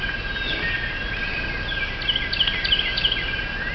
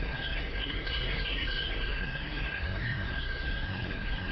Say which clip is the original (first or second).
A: first